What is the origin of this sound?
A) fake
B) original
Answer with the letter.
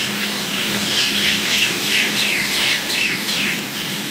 A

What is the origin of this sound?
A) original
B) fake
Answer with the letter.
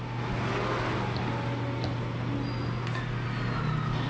A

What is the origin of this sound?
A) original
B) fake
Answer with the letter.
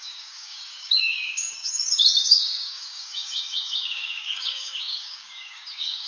B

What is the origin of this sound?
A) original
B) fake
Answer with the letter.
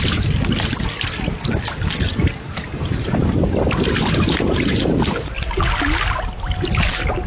A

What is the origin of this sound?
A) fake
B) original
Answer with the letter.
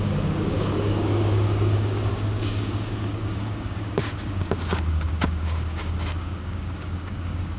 A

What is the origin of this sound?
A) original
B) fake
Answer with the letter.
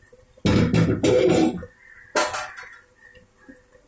A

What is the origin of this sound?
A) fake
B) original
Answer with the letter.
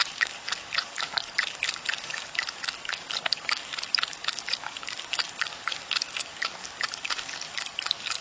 A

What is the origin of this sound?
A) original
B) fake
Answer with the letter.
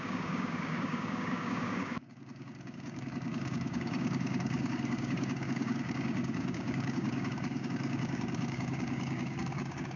B